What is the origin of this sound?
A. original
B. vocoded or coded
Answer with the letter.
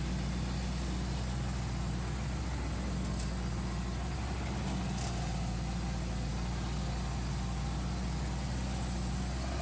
A